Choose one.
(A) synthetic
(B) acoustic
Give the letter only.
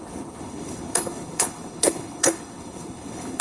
A